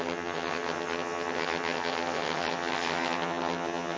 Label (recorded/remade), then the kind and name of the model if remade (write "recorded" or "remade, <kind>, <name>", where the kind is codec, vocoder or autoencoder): remade, vocoder, HiFi-GAN